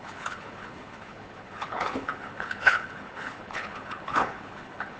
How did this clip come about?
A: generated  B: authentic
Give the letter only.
A